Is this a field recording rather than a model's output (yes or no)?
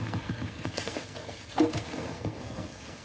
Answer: no